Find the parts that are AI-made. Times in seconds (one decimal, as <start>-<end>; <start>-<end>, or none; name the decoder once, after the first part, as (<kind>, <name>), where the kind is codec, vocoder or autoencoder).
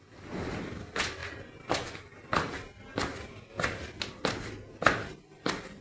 none